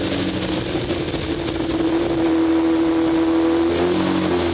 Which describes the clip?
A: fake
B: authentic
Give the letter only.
B